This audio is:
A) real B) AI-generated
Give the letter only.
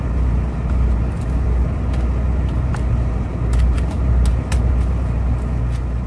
A